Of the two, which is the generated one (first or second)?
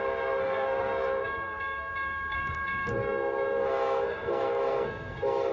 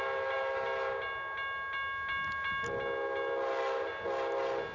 first